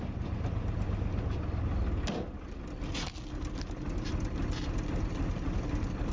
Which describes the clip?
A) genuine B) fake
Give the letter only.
A